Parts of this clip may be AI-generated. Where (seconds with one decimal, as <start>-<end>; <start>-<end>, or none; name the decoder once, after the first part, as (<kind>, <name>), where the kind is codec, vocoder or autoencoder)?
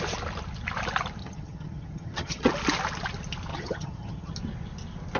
1.2-2.5 (vocoder, HiFi-GAN); 3.5-4.3